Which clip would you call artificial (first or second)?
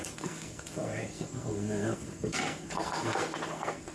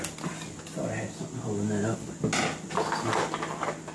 first